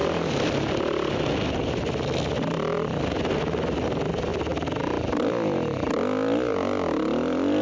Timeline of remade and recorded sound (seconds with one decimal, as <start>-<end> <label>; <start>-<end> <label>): 0.0-0.7 remade; 0.7-7.6 recorded

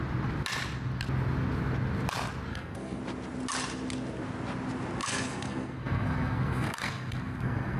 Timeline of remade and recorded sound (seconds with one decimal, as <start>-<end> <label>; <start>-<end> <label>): 0.0-2.5 recorded; 2.5-3.0 remade; 3.0-5.0 recorded; 5.0-7.8 remade